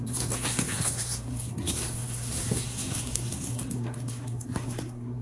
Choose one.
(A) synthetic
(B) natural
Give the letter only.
A